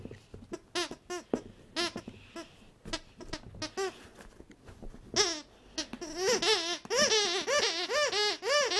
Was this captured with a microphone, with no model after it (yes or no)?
yes